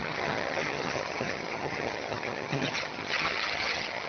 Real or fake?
fake